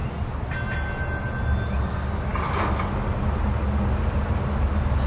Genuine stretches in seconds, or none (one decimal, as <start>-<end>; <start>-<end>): 0.0-5.1